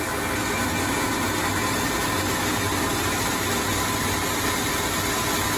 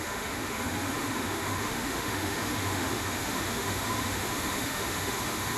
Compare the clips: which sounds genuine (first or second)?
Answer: first